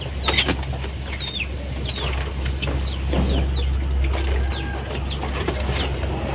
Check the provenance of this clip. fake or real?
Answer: real